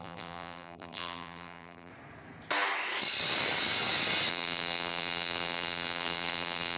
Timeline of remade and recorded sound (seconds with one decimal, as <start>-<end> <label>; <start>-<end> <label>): 0.0-1.9 remade; 1.9-4.3 recorded; 4.3-6.8 remade